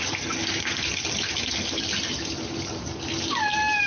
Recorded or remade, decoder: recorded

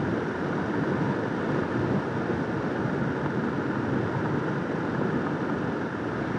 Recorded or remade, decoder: recorded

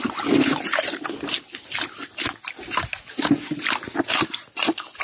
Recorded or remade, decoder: recorded